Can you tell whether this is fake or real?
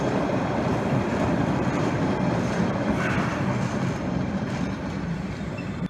fake